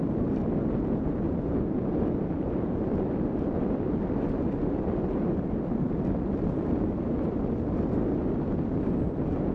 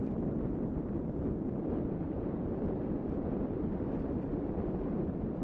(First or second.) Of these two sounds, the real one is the first